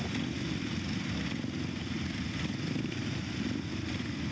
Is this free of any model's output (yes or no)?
yes